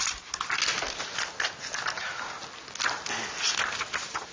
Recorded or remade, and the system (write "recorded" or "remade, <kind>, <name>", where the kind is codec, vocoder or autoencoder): recorded